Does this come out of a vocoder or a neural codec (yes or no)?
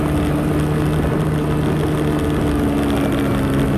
no